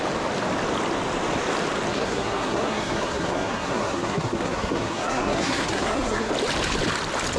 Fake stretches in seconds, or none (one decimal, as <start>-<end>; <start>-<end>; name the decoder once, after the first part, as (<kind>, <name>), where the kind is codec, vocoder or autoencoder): 1.9-6.3 (codec, SNAC)